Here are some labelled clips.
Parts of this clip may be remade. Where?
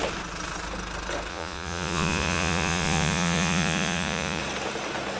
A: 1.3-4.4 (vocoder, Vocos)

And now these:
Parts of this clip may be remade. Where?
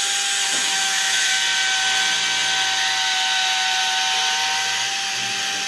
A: 0.5-1.3 (autoencoder, DAC-VAE)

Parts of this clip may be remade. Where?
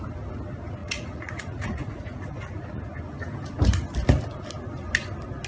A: 0.8-2.8 (vocoder, Vocos)